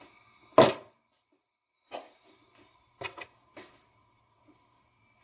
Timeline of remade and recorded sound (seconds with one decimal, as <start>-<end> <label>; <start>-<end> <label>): 0.0-5.2 recorded